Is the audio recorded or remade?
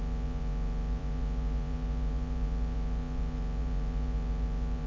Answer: remade